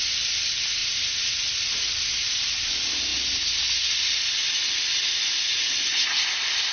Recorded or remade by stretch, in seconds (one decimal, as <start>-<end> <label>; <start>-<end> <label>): 0.0-6.7 recorded